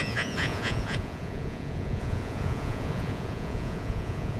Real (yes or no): no